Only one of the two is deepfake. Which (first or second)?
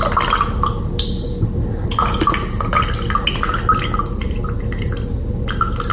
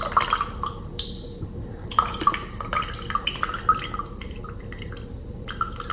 second